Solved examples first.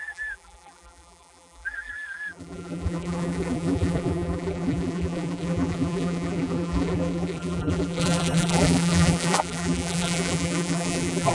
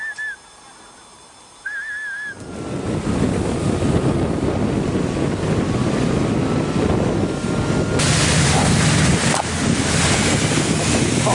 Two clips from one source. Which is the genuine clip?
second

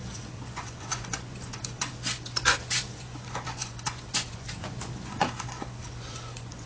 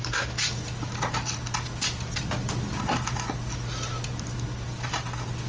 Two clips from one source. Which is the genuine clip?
second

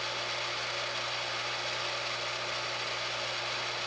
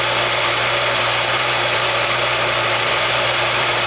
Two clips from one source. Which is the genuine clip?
first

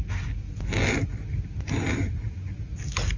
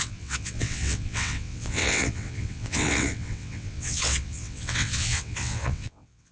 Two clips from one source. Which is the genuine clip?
first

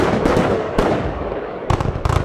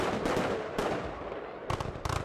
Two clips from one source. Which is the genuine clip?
second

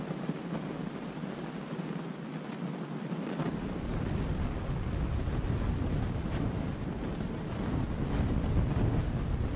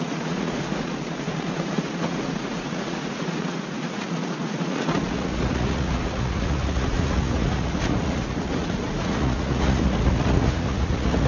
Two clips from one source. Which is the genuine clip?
first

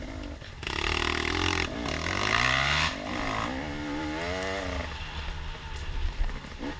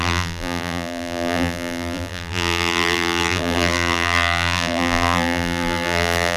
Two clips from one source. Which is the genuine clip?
first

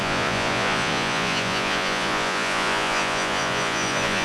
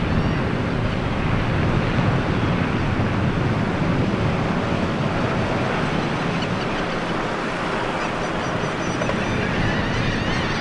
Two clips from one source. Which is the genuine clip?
second